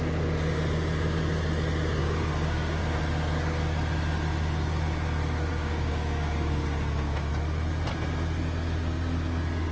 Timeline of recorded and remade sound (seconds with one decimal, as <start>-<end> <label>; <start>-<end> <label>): 0.0-2.0 recorded; 2.0-2.8 remade; 2.8-5.5 recorded; 5.5-7.3 remade; 7.3-9.7 recorded